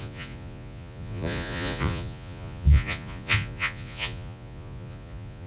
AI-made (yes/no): yes